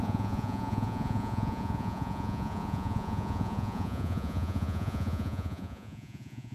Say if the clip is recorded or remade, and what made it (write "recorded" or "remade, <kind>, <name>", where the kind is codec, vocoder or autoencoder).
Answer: remade, vocoder, Vocos